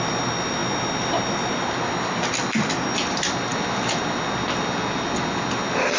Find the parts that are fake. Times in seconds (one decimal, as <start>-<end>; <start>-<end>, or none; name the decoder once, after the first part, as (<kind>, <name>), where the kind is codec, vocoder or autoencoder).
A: none